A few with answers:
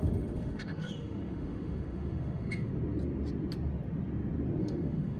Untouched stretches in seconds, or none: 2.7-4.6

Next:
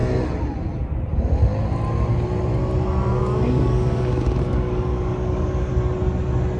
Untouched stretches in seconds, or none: 0.0-3.1; 5.7-6.6